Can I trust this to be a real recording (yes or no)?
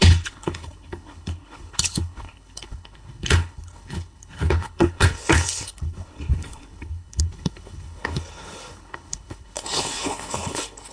no